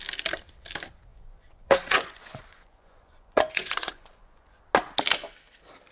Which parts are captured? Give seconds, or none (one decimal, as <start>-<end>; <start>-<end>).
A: 0.0-1.1; 4.6-5.9